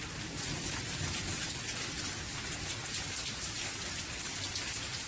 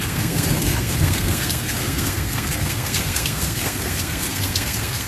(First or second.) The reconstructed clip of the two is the second